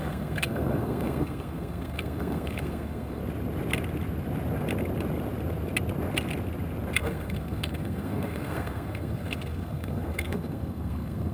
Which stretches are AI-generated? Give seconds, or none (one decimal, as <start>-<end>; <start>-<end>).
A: 0.0-3.2; 7.0-11.3